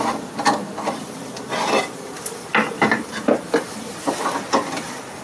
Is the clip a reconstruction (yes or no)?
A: no